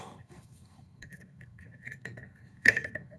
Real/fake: fake